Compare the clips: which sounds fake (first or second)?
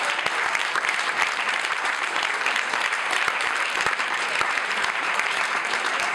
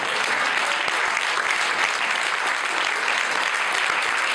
first